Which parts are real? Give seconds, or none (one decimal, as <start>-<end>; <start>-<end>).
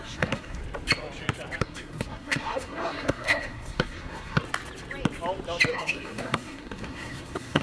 0.6-1.6; 4.4-5.7